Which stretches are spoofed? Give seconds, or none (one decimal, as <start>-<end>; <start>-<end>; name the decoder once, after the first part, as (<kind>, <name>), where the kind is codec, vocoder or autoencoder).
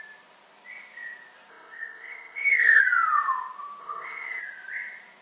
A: 1.5-2.8 (codec, ZipCodec); 3.8-4.4